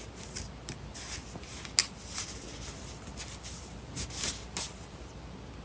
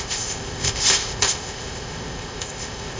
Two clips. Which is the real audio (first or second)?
first